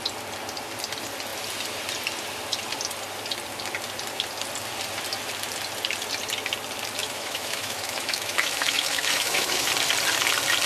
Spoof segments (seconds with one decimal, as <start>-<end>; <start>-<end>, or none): 7.0-9.7